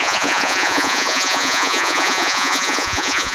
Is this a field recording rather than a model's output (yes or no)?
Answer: no